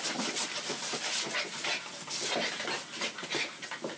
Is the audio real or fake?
real